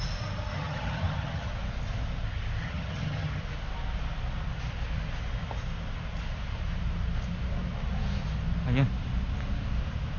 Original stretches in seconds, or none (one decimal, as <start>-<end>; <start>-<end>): 0.0-0.5; 1.5-2.6; 3.4-10.2